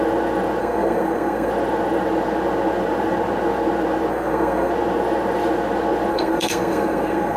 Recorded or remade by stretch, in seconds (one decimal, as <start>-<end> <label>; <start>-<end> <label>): 0.0-0.6 recorded; 0.6-1.5 remade; 1.5-4.1 recorded; 4.1-4.7 remade; 4.7-6.1 recorded; 6.1-7.4 remade

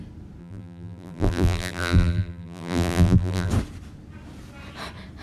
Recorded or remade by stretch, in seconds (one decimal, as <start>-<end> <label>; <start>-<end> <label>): 0.0-0.4 recorded; 0.4-3.5 remade; 3.5-5.2 recorded

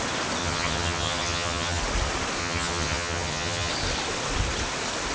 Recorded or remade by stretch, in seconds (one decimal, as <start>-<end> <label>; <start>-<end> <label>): 0.0-0.4 recorded; 0.4-1.8 remade; 1.8-2.4 recorded; 2.4-3.7 remade; 3.7-5.1 recorded